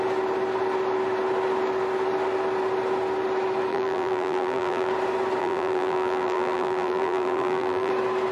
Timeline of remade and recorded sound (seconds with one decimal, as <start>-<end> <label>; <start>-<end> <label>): 0.0-3.7 recorded; 3.7-4.9 remade; 4.9-5.4 recorded; 5.4-7.9 remade; 7.9-8.3 recorded